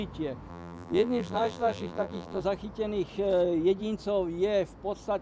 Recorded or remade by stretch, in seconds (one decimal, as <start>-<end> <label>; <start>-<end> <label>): 0.0-0.5 recorded; 0.5-2.4 remade; 2.4-5.2 recorded